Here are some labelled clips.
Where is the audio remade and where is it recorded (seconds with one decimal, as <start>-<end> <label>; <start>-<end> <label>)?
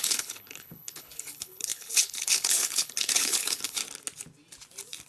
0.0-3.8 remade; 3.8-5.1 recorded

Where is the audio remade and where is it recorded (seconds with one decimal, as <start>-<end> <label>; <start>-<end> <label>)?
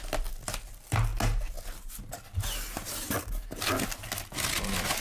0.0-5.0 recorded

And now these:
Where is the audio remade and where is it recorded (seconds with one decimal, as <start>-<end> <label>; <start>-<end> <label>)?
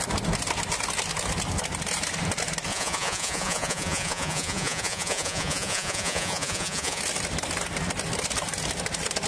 0.0-2.7 recorded; 2.7-7.0 remade; 7.0-9.3 recorded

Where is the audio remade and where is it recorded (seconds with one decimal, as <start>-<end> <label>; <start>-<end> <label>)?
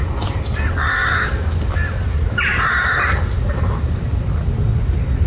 0.0-5.3 recorded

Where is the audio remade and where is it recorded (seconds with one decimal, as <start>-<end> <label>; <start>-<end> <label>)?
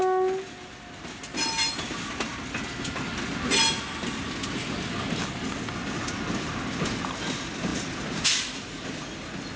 0.0-9.6 recorded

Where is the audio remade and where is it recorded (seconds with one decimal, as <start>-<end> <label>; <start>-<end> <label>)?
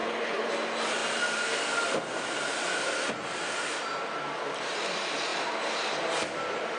0.0-0.5 remade; 0.5-6.8 recorded